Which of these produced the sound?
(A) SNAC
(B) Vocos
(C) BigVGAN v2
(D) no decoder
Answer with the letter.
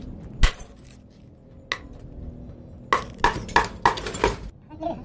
D